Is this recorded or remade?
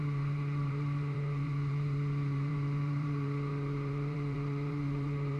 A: remade